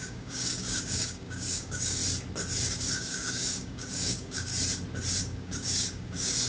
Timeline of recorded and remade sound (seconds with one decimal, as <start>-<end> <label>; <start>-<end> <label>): 0.0-2.0 remade; 2.0-2.6 recorded; 2.6-4.5 remade; 4.5-5.2 recorded; 5.2-6.5 remade